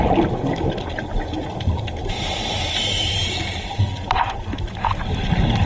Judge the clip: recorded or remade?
recorded